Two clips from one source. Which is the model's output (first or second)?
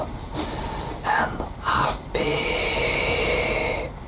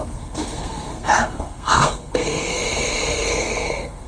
second